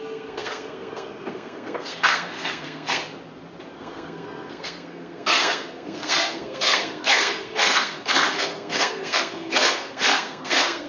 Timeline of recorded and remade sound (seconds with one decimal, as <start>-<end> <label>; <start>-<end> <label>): 0.0-3.0 remade; 3.0-3.8 recorded; 3.8-10.9 remade